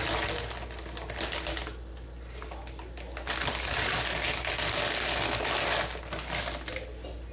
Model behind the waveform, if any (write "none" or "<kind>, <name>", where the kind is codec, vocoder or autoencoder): none